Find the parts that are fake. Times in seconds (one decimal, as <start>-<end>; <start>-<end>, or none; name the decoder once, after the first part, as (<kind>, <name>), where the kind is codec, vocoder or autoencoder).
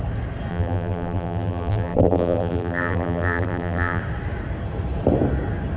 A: 0.5-4.0 (vocoder, BigVGAN v2)